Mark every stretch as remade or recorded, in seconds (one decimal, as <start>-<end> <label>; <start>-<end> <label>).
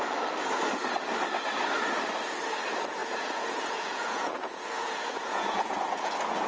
0.0-3.0 recorded; 3.0-6.1 remade; 6.1-6.5 recorded